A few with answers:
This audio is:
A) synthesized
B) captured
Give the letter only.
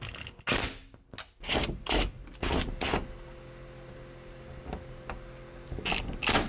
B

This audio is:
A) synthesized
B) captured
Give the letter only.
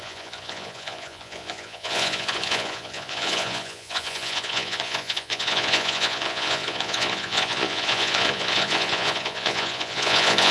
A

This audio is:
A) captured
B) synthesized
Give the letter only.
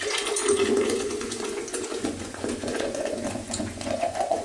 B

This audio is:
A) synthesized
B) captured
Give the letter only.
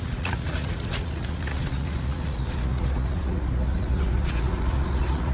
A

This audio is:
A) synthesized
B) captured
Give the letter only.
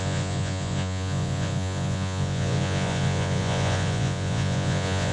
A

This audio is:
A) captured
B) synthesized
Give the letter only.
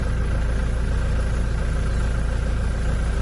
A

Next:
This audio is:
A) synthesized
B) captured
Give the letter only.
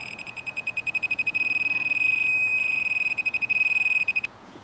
A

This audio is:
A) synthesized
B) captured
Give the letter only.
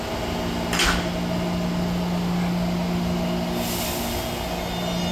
B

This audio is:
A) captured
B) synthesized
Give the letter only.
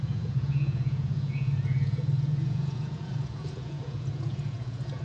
B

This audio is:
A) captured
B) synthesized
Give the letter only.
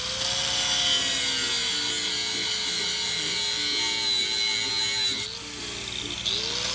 A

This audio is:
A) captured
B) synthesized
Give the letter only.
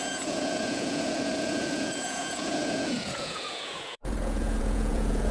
B